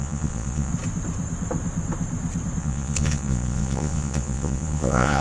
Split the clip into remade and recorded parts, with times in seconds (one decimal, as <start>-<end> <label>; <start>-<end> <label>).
0.0-0.7 remade; 0.7-2.6 recorded; 2.6-5.2 remade